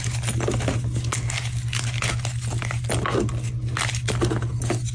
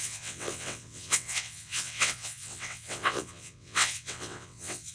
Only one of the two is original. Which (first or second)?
first